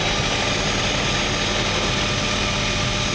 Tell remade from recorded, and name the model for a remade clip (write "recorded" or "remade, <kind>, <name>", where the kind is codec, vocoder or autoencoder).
recorded